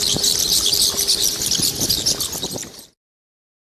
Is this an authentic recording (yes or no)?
yes